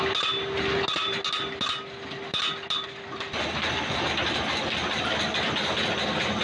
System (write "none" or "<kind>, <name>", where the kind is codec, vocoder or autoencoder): none